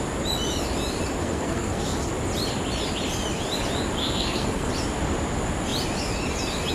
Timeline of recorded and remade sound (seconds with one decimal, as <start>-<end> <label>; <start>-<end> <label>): 0.0-1.2 recorded; 1.2-2.1 remade; 2.1-4.0 recorded; 4.0-4.7 remade; 4.7-6.7 recorded